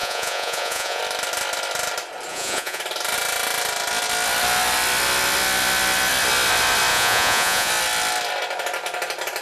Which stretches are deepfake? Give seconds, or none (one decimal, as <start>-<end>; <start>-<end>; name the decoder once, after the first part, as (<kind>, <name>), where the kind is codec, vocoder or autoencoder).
0.0-1.0 (vocoder, Vocos); 2.3-2.8; 6.9-7.7